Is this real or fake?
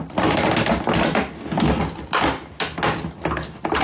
real